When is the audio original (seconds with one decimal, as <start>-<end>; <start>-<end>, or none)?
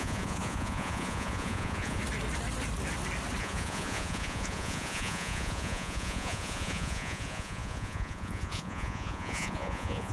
2.0-3.4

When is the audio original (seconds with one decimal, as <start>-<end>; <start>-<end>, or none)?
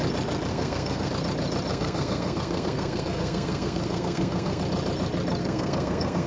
0.0-0.5; 1.1-1.7; 4.6-5.4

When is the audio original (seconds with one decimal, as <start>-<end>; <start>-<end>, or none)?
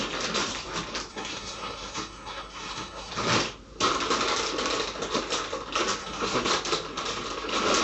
0.0-1.1; 3.1-6.0; 6.5-7.8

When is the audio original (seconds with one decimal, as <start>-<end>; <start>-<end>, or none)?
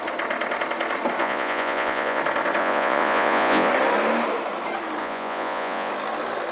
0.0-1.2; 2.2-2.6; 3.7-5.0; 5.9-6.5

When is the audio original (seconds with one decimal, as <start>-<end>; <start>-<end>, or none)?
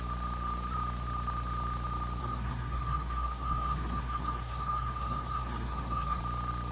0.0-2.2; 6.2-6.7